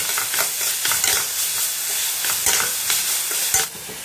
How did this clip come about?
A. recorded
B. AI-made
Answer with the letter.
A